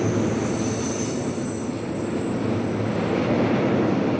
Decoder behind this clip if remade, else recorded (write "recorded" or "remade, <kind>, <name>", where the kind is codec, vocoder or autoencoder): recorded